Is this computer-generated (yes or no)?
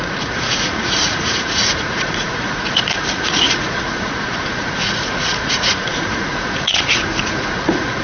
yes